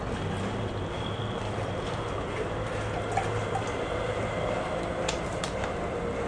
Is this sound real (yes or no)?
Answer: yes